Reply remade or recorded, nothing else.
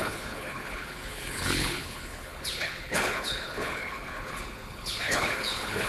remade